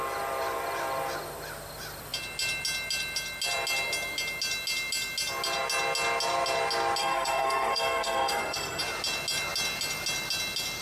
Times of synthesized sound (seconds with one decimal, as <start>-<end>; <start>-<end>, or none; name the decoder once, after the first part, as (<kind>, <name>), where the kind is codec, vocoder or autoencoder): 7.0-8.8 (codec, SNAC)